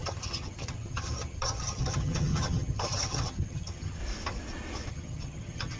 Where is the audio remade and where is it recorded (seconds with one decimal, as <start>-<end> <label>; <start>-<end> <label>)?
0.0-4.0 remade; 4.0-4.9 recorded; 4.9-5.8 remade